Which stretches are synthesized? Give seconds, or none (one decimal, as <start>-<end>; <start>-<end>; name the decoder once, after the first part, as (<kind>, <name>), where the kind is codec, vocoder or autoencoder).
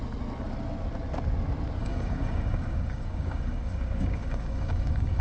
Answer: 1.8-5.2 (codec, DAC)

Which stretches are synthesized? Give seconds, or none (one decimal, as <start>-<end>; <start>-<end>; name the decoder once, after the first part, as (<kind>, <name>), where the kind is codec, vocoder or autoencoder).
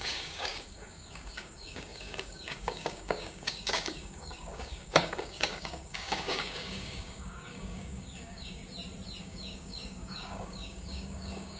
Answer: 0.0-8.6 (codec, DAC); 9.2-11.6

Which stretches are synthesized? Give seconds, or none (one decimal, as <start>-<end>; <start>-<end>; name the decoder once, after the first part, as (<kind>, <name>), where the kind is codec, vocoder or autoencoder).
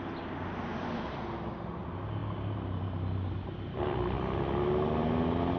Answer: none